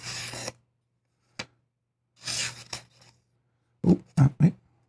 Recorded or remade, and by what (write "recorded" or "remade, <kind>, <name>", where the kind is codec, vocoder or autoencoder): recorded